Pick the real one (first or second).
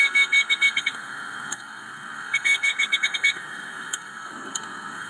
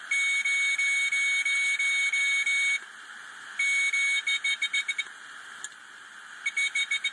second